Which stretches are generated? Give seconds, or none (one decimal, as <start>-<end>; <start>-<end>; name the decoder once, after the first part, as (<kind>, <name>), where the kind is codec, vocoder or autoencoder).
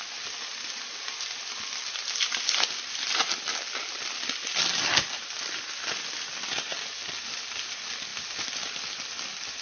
none